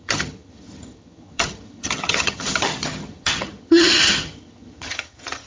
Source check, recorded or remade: remade